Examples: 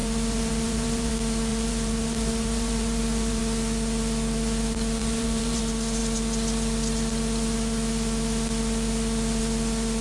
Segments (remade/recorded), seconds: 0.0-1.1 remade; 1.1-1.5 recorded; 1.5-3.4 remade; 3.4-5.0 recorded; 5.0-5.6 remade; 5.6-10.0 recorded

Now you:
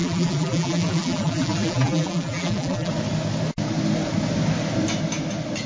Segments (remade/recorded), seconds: 0.0-2.9 remade; 2.9-5.7 recorded

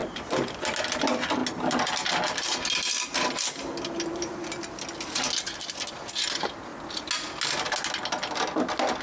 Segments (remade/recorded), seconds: 0.0-0.6 remade; 0.6-9.0 recorded

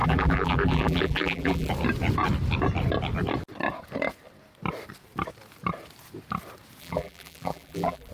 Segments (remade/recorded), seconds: 0.0-1.7 remade; 1.7-6.8 recorded; 6.8-8.1 remade